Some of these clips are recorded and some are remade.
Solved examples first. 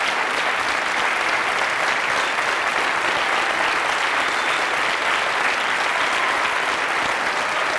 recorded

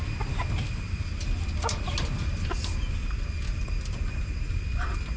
recorded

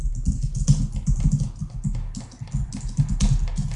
recorded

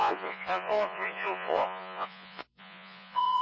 remade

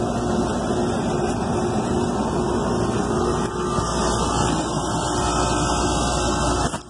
recorded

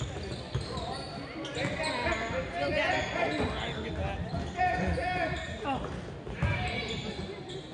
recorded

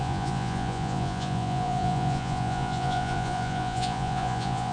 remade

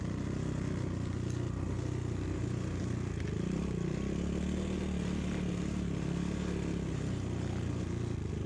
recorded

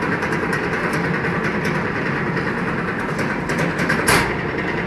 recorded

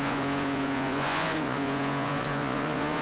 remade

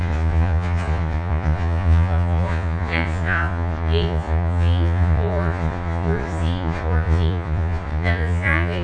remade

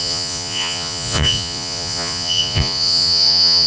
remade